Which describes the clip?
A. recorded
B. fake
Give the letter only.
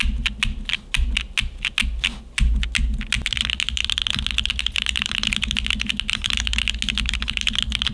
A